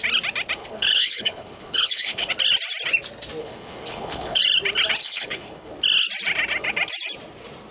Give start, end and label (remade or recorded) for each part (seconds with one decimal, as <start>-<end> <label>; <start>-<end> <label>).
0.0-0.6 recorded; 0.6-2.3 remade; 2.3-3.4 recorded; 3.4-4.4 remade; 4.4-5.0 recorded; 5.0-5.7 remade; 5.7-7.7 recorded